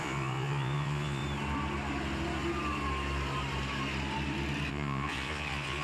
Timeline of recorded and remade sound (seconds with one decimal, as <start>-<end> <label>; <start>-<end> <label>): 0.0-1.2 remade; 1.2-4.7 recorded; 4.7-5.8 remade